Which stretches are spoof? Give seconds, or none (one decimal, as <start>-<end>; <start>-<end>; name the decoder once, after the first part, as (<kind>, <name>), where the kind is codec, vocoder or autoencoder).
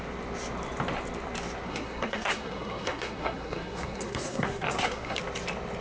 1.7-5.2 (codec, SNAC)